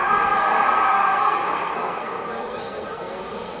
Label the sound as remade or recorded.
remade